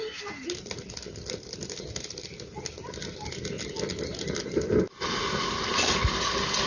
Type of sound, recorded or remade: recorded